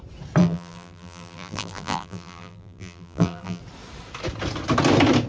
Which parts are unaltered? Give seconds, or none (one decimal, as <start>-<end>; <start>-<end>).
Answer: 0.0-0.4; 3.6-5.3